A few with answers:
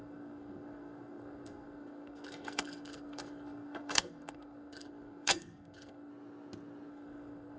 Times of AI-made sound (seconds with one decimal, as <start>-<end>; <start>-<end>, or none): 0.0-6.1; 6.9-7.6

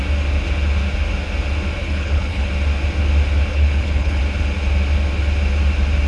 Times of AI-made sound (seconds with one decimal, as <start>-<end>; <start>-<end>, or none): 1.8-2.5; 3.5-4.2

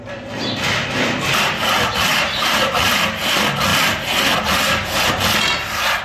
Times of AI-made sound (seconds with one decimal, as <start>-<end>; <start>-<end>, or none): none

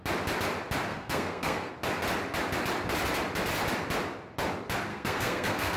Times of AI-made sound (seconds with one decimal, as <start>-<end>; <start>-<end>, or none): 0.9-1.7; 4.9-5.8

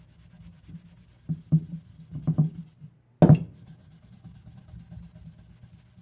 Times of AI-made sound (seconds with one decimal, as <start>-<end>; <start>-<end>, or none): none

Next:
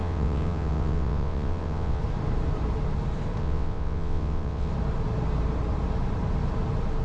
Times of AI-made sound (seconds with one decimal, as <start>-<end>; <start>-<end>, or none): 0.0-2.0; 3.4-4.7

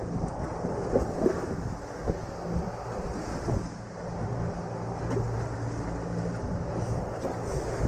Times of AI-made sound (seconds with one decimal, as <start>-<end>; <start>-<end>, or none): none